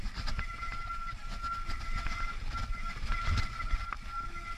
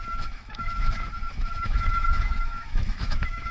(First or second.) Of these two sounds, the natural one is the first